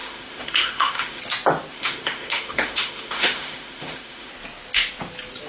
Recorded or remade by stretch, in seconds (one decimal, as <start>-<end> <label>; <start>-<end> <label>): 0.0-1.2 remade; 1.2-1.7 recorded; 1.7-4.3 remade; 4.3-5.5 recorded